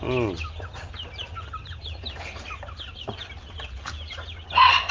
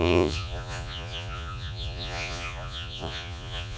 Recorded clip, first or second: first